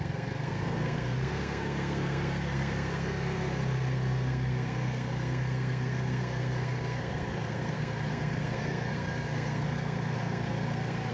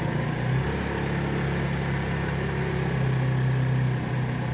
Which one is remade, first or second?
first